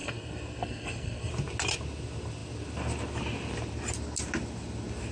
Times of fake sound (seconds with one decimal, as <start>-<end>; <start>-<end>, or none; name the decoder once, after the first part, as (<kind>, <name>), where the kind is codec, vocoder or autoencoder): 0.0-1.3 (codec, SNAC)